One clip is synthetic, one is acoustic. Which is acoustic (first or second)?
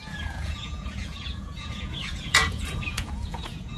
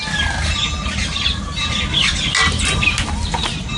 second